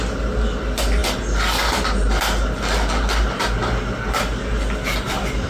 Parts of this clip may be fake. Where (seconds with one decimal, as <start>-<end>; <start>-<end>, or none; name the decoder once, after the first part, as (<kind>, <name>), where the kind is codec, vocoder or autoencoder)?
none